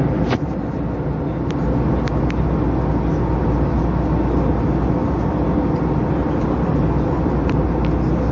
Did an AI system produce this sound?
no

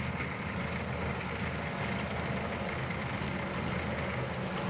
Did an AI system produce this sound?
no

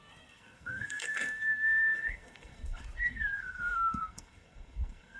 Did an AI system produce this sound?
yes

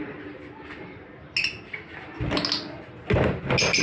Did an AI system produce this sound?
no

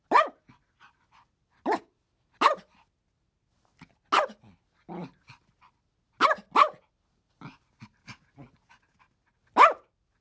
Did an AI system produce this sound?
no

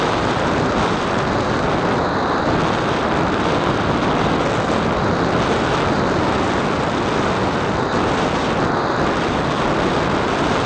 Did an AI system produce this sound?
no